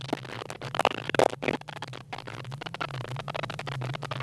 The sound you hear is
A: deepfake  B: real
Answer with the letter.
B